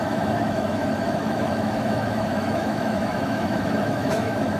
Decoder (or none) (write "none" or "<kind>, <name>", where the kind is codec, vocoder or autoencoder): autoencoder, DAC-VAE